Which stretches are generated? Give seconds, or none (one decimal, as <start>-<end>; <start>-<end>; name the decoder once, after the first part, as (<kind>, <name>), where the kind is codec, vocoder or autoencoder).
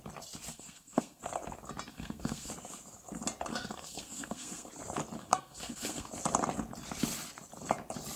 0.5-1.2 (codec, SNAC); 1.9-2.5; 3.5-4.7; 5.2-6.1